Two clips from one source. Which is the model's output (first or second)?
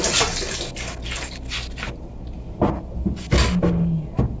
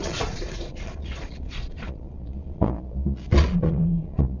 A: second